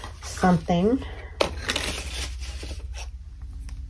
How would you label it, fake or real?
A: real